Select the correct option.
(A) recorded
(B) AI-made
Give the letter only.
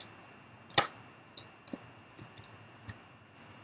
A